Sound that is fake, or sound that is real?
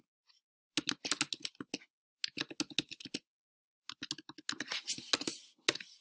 real